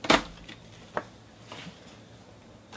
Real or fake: real